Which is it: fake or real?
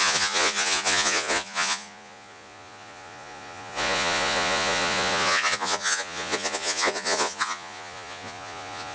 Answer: fake